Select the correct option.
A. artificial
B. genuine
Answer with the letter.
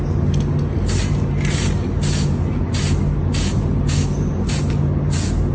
B